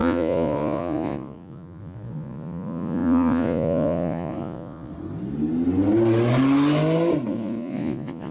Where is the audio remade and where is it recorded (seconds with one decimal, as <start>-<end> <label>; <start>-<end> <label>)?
0.0-4.9 remade; 4.9-7.3 recorded; 7.3-8.3 remade